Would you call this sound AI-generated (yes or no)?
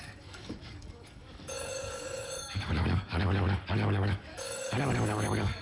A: yes